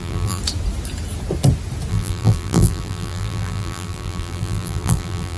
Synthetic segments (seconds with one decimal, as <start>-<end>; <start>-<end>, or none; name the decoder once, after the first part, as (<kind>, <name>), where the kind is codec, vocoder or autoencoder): 0.0-0.4 (vocoder, BigVGAN v2); 1.9-5.4